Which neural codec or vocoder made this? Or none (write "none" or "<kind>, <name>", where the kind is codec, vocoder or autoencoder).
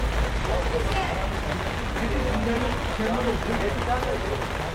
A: none